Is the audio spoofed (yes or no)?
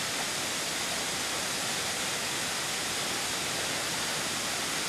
no